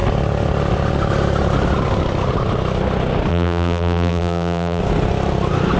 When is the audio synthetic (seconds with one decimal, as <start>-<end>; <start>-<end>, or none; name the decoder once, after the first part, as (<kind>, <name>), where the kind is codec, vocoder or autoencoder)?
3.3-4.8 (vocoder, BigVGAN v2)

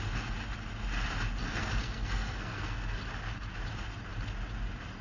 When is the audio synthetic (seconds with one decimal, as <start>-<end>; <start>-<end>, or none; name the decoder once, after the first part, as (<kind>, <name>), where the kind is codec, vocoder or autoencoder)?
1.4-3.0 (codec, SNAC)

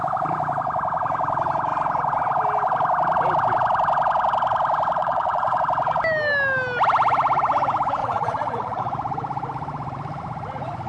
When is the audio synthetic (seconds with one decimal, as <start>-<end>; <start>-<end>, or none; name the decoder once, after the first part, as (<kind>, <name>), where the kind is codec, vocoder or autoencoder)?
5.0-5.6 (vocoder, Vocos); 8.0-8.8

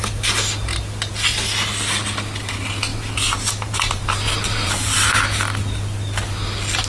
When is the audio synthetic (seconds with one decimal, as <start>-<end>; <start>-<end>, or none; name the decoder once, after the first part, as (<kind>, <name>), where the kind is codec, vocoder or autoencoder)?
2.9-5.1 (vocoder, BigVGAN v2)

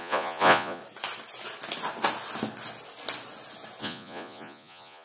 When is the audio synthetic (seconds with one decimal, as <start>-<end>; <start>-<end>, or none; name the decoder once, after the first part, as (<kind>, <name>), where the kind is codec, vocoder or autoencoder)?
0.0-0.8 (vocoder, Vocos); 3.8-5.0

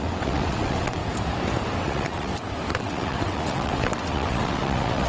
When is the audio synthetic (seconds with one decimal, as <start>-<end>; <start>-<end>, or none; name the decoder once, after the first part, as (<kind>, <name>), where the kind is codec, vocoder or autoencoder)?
0.0-1.0 (vocoder, WaveNeXt); 1.8-2.3; 2.8-5.1